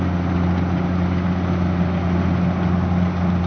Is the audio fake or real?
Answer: real